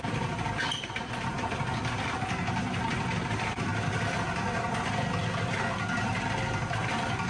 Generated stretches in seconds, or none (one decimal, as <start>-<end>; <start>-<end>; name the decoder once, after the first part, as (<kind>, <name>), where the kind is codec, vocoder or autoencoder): 0.0-1.3 (vocoder, BigVGAN v2); 3.0-3.7; 6.8-7.3